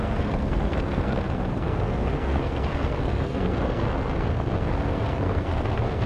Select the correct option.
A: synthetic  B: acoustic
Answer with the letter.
A